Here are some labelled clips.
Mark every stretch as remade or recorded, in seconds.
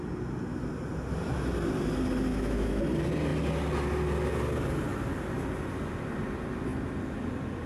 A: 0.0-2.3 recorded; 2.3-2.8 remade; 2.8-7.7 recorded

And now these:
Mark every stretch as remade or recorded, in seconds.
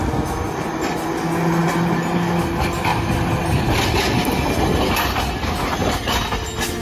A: 0.0-6.8 recorded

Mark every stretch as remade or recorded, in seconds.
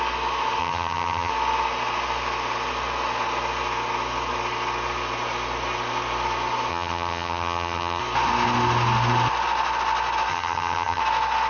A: 0.0-0.6 recorded; 0.6-1.3 remade; 1.3-6.7 recorded; 6.7-8.0 remade; 8.0-10.3 recorded; 10.3-11.0 remade; 11.0-11.5 recorded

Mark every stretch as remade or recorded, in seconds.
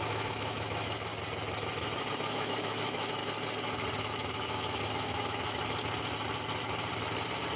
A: 0.0-1.1 remade; 1.1-2.1 recorded; 2.1-3.2 remade; 3.2-4.0 recorded; 4.0-5.6 remade; 5.6-7.6 recorded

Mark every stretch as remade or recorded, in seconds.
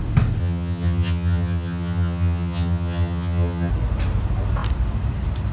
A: 0.0-0.4 recorded; 0.4-3.7 remade; 3.7-5.5 recorded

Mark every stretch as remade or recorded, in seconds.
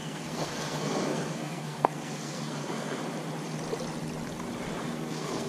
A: 0.0-3.0 remade; 3.0-4.8 recorded; 4.8-5.5 remade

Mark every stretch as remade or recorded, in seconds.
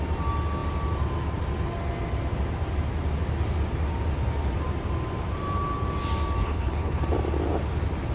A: 0.0-6.4 recorded; 6.4-7.0 remade; 7.0-8.1 recorded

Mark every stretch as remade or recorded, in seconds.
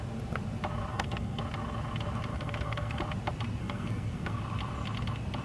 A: 0.0-0.9 recorded; 0.9-1.4 remade; 1.4-2.3 recorded; 2.3-3.0 remade; 3.0-3.6 recorded; 3.6-4.4 remade; 4.4-5.4 recorded